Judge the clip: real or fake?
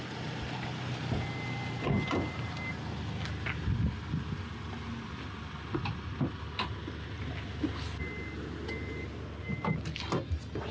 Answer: real